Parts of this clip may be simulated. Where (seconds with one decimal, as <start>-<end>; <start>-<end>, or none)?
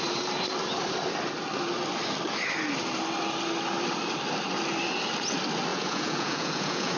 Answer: 5.7-7.0